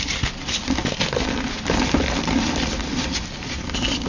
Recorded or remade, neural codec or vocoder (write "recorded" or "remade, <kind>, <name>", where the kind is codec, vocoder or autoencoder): recorded